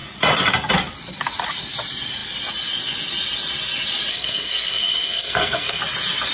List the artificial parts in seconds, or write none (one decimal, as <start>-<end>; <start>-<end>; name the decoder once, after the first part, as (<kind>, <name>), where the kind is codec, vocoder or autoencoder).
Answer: 4.1-5.8 (codec, SNAC)